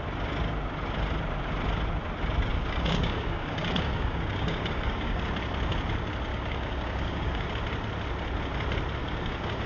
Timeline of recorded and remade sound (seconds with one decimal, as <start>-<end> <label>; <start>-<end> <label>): 0.0-2.5 recorded; 2.5-5.3 remade; 5.3-6.3 recorded; 6.3-7.5 remade; 7.5-9.0 recorded; 9.0-9.7 remade